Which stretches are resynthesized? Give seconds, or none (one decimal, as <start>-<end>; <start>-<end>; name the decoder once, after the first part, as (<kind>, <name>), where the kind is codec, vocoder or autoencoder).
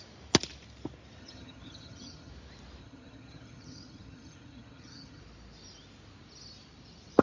1.2-2.3 (vocoder, HiFi-GAN); 2.8-5.2